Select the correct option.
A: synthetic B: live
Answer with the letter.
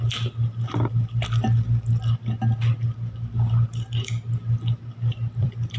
A